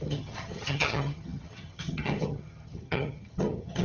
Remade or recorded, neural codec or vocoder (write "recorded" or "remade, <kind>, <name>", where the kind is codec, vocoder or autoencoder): remade, vocoder, HiFi-GAN